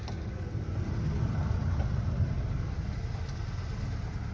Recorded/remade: recorded